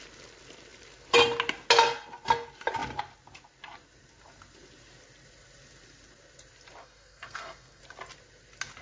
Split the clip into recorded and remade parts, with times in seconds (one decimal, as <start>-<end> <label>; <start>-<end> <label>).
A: 0.0-6.8 recorded; 6.8-7.8 remade; 7.8-8.8 recorded